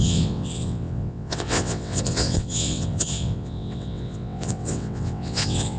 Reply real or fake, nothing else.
fake